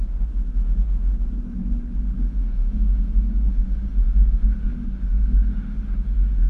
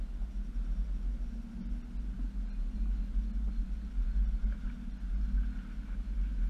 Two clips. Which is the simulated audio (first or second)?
first